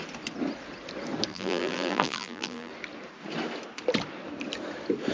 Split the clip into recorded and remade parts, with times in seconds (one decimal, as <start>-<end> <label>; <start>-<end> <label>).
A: 0.0-1.3 recorded; 1.3-2.7 remade; 2.7-5.1 recorded